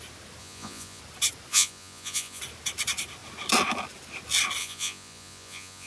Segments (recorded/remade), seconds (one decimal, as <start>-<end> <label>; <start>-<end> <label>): 0.0-0.4 recorded; 0.4-1.0 remade; 1.0-1.5 recorded; 1.5-2.4 remade; 2.4-4.6 recorded; 4.6-5.9 remade